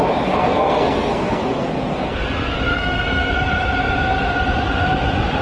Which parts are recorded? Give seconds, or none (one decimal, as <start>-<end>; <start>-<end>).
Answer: 0.0-0.4; 2.2-2.7; 3.3-5.4